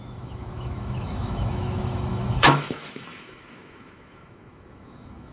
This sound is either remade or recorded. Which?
remade